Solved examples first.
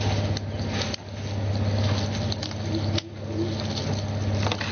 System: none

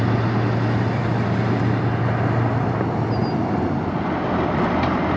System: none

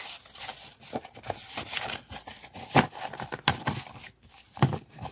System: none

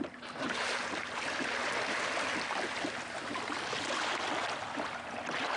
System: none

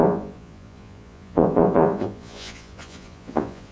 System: vocoder, Vocos